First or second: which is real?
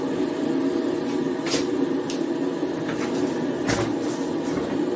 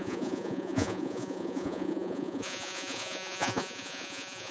first